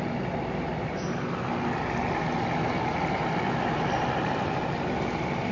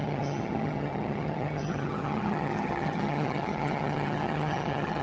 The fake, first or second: second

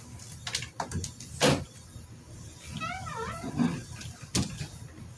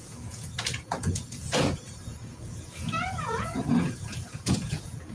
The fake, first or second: second